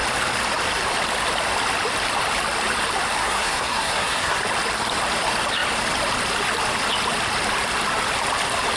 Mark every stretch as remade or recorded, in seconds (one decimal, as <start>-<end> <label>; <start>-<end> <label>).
0.0-3.2 recorded; 3.2-4.4 remade; 4.4-8.8 recorded